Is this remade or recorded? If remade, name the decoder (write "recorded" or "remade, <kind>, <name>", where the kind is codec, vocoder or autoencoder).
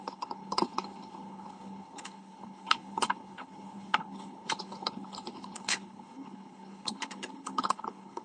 remade, codec, HILCodec